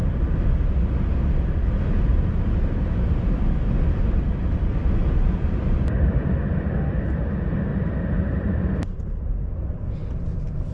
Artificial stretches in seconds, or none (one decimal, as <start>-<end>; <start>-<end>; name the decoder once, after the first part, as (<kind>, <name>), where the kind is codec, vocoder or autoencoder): 0.0-0.6 (vocoder, BigVGAN v2); 2.1-6.7; 7.7-9.0